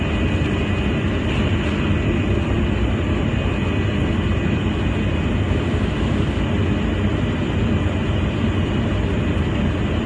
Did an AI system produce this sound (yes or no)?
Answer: no